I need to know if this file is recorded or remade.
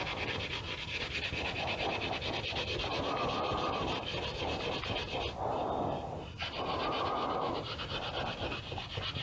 recorded